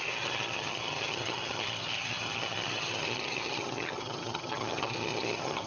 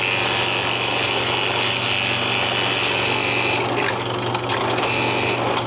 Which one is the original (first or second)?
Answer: second